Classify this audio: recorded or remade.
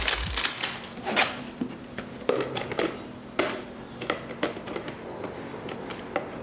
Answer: recorded